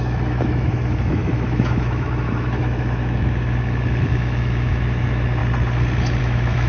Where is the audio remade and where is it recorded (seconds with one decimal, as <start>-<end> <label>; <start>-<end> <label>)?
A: 0.0-5.4 remade; 5.4-6.2 recorded; 6.2-6.7 remade